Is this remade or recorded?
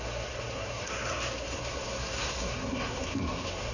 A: remade